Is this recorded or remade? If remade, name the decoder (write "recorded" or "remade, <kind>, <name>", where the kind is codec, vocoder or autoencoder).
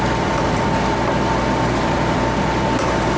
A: remade, vocoder, BigVGAN v2